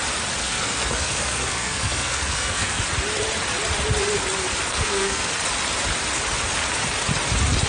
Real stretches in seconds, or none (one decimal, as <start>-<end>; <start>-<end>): 0.0-0.4; 2.8-4.7; 5.3-7.7

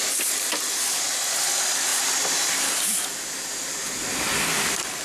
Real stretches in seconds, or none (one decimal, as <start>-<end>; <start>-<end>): 0.0-1.9; 3.7-5.0